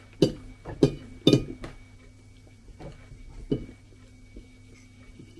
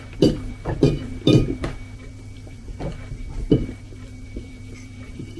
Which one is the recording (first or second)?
first